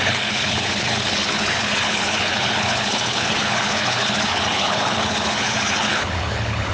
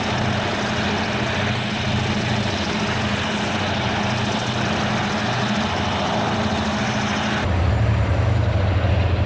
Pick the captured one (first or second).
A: second